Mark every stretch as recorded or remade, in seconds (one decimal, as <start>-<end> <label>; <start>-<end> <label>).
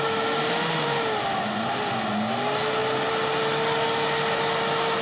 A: 0.0-5.0 recorded